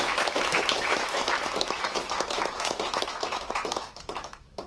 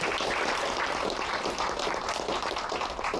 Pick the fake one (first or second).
first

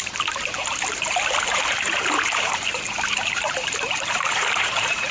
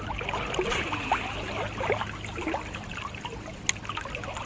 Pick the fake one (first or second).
first